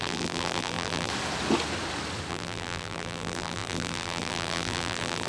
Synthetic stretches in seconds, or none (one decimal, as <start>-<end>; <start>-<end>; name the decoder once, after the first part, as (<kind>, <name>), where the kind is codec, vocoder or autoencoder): 0.0-1.1 (vocoder, BigVGAN v2); 2.3-5.3